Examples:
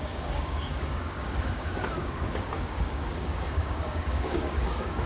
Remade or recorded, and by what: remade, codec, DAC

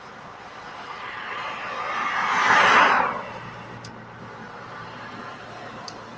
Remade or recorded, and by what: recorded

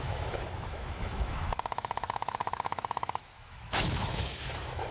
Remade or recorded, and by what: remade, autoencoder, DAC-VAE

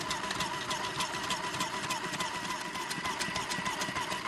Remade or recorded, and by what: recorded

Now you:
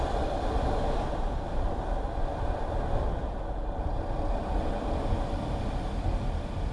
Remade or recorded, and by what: recorded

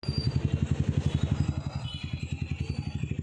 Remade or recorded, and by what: recorded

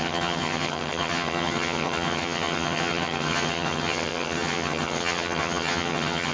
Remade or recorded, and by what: remade, vocoder, HiFi-GAN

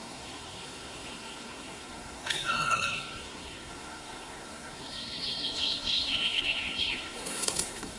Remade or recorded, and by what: remade, codec, SNAC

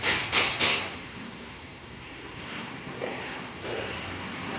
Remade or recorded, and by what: remade, codec, SNAC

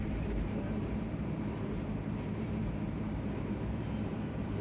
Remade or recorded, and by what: remade, vocoder, BigVGAN v2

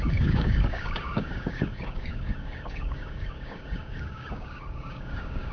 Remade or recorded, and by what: remade, codec, DAC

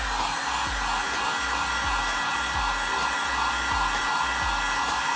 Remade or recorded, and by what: recorded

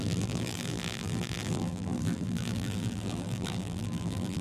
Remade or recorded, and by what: remade, vocoder, BigVGAN v2